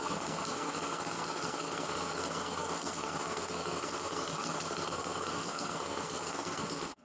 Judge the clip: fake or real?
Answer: fake